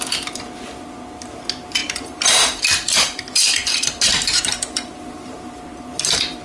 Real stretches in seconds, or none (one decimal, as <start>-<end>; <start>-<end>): 0.0-1.8; 5.6-6.4